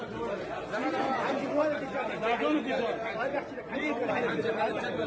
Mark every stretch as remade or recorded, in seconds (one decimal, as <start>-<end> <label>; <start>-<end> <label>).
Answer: 0.0-5.1 recorded